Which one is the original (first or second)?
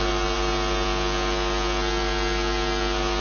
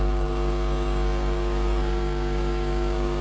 first